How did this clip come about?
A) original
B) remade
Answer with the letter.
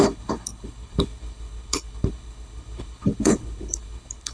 B